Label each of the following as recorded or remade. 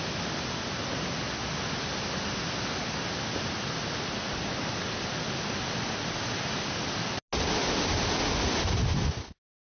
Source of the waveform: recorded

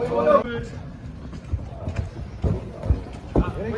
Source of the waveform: recorded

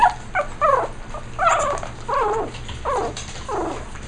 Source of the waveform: recorded